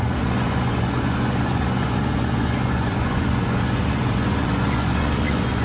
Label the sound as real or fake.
fake